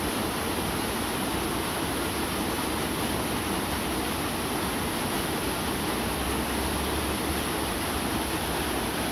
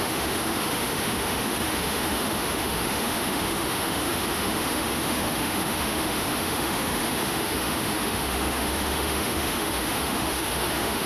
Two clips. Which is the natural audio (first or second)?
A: first